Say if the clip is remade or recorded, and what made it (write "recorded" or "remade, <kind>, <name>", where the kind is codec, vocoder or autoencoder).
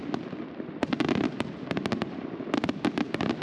recorded